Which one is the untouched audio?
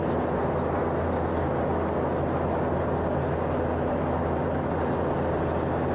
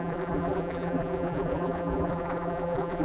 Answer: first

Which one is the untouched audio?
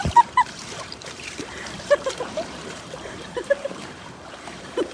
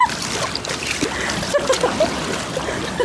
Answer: second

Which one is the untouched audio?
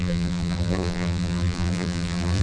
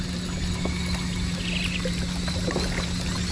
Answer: second